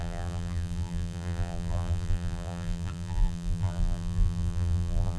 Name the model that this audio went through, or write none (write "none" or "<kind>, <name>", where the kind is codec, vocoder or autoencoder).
vocoder, BigVGAN v2